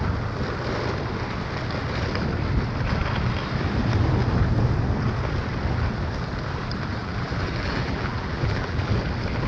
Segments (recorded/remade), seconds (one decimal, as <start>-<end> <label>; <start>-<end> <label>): 0.0-7.0 recorded; 7.0-8.8 remade; 8.8-9.5 recorded